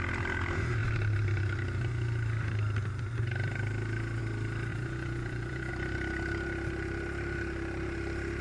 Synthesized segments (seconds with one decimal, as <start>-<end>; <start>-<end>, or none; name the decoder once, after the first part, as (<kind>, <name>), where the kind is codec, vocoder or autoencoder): 4.7-5.7 (vocoder, Vocos)